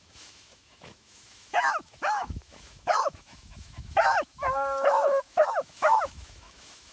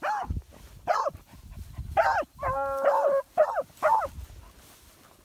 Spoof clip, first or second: first